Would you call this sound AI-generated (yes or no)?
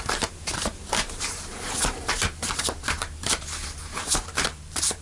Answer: yes